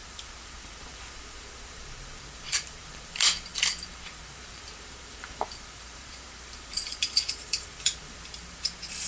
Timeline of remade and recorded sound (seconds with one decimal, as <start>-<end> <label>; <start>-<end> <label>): 0.0-9.1 remade